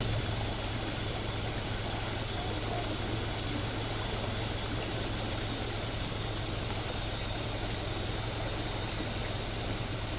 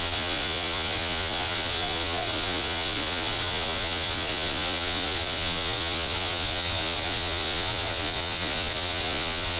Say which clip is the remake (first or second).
second